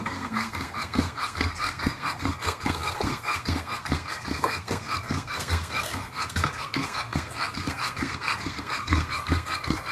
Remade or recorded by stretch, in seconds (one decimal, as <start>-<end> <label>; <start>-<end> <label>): 0.0-9.9 remade